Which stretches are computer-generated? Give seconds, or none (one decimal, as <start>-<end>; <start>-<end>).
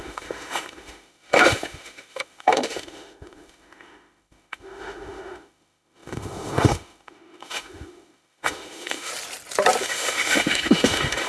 0.0-9.1; 9.8-11.3